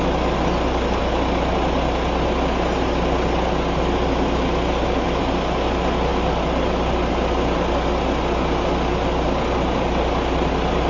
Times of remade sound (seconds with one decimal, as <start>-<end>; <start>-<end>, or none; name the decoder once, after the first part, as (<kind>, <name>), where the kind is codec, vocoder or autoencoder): none

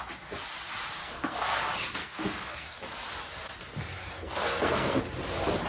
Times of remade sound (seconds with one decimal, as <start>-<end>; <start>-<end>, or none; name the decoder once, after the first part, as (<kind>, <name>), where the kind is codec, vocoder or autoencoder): 1.0-1.6 (codec, SNAC); 2.0-2.8; 4.0-5.0